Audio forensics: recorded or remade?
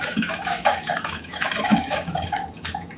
remade